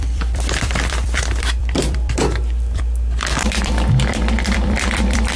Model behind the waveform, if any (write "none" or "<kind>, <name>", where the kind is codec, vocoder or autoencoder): vocoder, BigVGAN v2